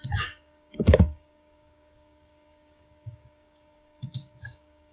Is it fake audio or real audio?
fake